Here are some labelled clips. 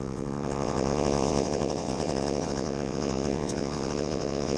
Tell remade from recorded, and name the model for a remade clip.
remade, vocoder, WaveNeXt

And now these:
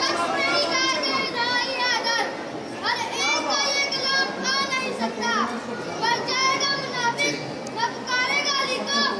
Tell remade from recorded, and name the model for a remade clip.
recorded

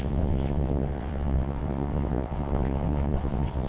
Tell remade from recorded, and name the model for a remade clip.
remade, vocoder, WaveNeXt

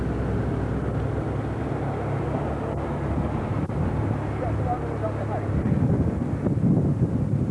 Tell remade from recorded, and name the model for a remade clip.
recorded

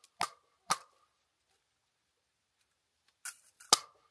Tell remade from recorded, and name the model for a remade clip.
recorded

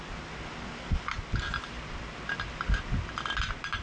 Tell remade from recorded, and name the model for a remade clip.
recorded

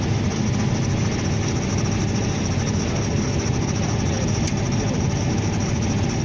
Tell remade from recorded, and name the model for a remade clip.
recorded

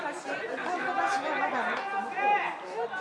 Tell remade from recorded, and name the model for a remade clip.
recorded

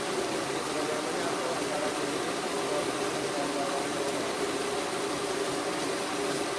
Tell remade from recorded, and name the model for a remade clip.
recorded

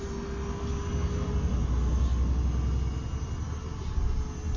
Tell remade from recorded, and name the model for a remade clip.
recorded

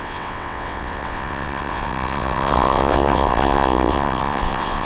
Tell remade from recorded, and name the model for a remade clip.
remade, vocoder, WaveNeXt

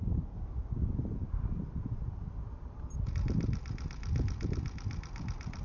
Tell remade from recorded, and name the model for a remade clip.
recorded